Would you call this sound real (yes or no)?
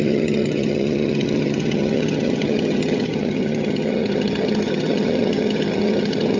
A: no